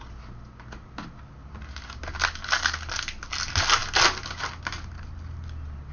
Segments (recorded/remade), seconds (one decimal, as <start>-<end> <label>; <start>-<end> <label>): 0.0-5.9 recorded